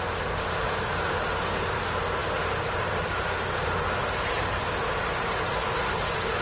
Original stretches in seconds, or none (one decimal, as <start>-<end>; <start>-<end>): 0.0-2.2; 4.5-6.4